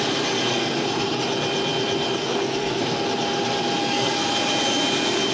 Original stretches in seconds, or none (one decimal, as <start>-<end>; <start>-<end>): 0.0-0.5; 1.2-2.2; 3.0-3.8; 4.3-5.3